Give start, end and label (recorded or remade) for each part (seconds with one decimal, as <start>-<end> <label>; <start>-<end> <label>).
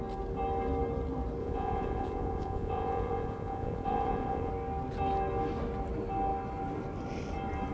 0.0-1.4 recorded; 1.4-4.5 remade; 4.5-7.7 recorded